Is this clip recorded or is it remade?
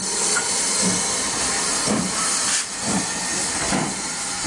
recorded